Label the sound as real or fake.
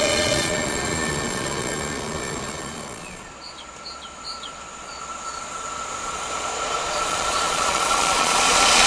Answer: fake